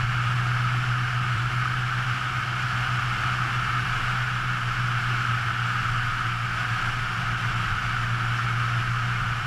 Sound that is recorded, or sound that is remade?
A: recorded